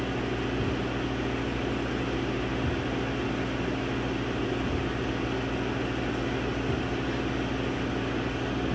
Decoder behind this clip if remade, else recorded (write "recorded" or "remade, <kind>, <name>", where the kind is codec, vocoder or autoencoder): recorded